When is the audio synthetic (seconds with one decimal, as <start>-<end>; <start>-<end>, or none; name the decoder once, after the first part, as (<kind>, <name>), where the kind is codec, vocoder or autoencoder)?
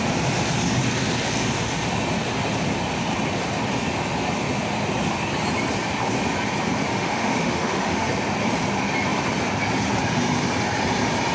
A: 6.9-8.1 (autoencoder, DAC-VAE)